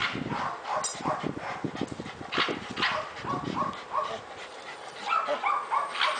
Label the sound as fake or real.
real